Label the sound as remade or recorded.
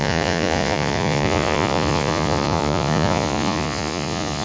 remade